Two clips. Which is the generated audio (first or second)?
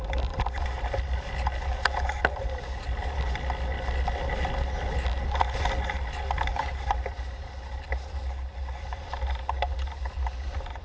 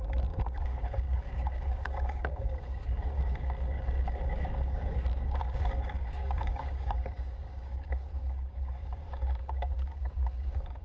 second